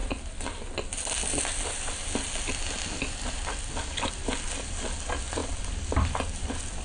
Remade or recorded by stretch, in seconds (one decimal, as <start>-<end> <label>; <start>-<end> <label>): 0.0-6.8 recorded